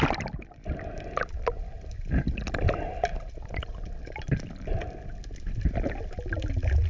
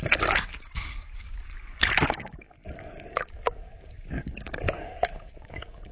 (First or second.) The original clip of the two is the first